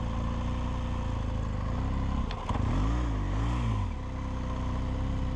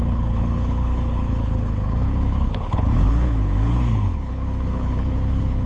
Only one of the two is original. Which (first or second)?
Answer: first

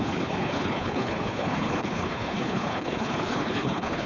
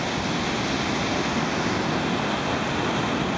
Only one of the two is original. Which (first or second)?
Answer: second